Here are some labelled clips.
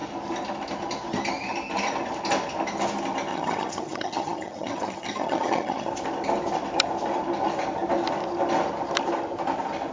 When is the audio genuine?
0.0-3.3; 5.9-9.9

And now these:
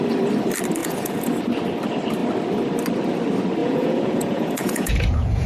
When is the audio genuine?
0.0-0.8; 1.4-3.6